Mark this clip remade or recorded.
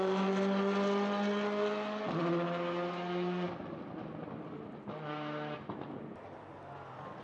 recorded